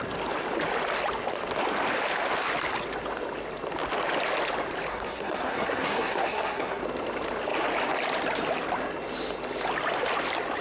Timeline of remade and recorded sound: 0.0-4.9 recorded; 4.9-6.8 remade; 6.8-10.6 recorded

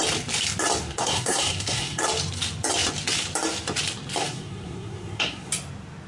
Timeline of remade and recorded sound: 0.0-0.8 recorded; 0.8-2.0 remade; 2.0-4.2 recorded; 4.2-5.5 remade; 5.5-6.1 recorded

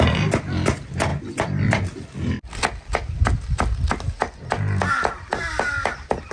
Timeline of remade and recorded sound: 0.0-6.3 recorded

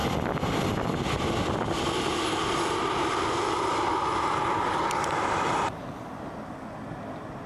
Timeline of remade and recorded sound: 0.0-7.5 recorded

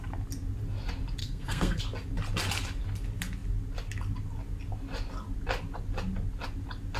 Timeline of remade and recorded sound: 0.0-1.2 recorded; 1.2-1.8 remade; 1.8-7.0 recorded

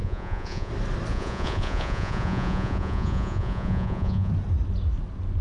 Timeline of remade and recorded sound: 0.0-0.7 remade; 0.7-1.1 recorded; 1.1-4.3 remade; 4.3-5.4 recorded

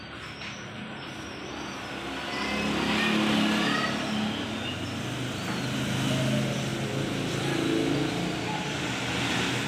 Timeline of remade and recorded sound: 0.0-9.7 recorded